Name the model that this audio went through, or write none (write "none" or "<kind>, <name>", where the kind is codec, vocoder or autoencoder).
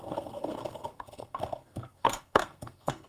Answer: codec, SNAC